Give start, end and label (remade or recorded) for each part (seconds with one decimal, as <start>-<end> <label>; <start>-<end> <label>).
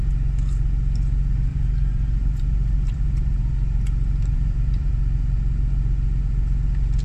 0.0-1.5 recorded; 1.5-3.5 remade; 3.5-4.3 recorded; 4.3-4.9 remade; 4.9-7.0 recorded